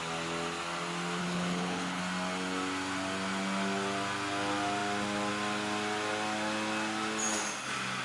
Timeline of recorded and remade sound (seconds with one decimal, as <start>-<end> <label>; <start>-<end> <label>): 0.0-1.2 recorded; 1.2-2.0 remade; 2.0-8.0 recorded